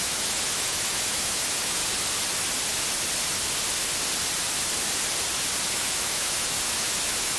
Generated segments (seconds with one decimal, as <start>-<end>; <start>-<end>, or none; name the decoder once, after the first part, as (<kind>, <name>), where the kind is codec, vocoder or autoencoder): 0.0-1.8 (autoencoder, DAC-VAE); 5.7-7.4

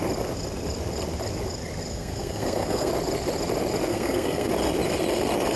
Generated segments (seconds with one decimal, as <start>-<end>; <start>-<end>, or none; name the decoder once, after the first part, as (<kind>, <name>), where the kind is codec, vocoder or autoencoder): 1.9-2.9 (codec, SNAC); 3.9-4.5

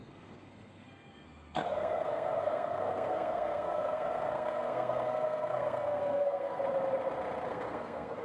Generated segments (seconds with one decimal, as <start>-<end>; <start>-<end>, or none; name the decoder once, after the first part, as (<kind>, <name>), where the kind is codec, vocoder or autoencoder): 0.0-6.6 (codec, SNAC); 7.5-8.2